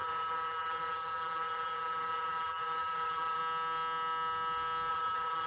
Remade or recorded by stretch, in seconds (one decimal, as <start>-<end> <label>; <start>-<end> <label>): 0.0-3.4 remade; 3.4-4.9 recorded; 4.9-5.5 remade